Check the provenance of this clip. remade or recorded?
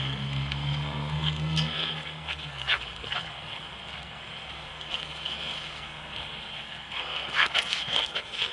remade